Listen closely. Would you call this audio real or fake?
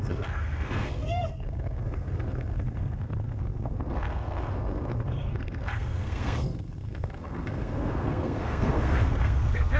fake